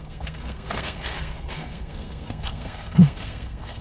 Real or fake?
fake